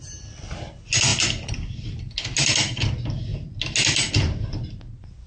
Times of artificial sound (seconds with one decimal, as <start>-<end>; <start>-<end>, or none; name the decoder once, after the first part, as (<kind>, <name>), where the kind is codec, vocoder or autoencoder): none